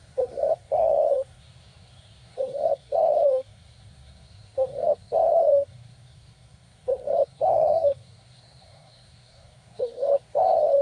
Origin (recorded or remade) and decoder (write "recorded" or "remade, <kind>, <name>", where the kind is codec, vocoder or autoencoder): remade, codec, SNAC